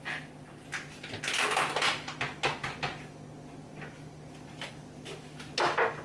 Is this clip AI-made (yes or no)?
no